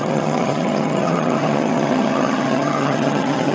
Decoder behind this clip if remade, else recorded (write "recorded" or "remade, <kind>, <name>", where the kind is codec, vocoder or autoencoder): remade, vocoder, HiFi-GAN